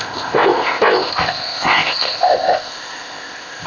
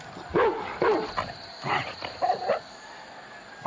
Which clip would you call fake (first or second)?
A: first